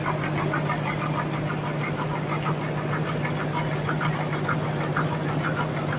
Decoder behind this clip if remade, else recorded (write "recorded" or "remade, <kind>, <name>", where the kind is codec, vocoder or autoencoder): recorded